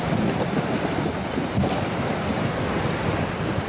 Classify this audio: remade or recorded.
recorded